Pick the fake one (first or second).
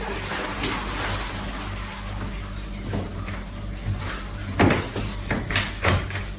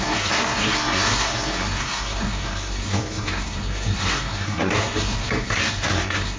second